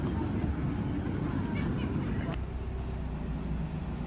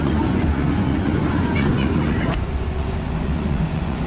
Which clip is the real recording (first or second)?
first